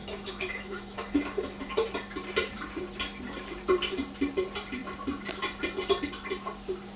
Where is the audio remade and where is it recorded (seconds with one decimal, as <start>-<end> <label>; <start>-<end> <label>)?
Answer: 0.0-1.9 remade; 1.9-7.0 recorded